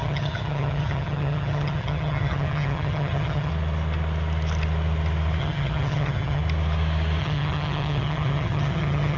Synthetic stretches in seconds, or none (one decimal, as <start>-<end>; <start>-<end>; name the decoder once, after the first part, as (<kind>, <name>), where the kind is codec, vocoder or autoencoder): 0.0-3.5 (vocoder, HiFi-GAN); 5.4-6.4; 7.2-9.2